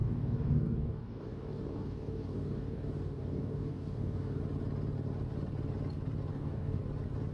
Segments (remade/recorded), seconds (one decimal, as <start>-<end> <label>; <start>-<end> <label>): 0.0-4.4 remade; 4.4-6.3 recorded; 6.3-6.8 remade; 6.8-7.3 recorded